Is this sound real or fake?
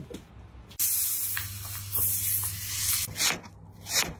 real